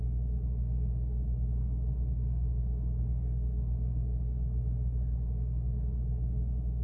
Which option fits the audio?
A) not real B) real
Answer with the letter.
B